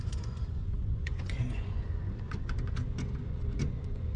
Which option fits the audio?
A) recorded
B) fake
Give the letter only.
B